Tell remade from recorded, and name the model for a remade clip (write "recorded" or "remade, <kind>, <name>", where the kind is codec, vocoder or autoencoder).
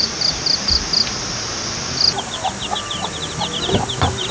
recorded